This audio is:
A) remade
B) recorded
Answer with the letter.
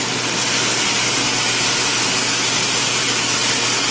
B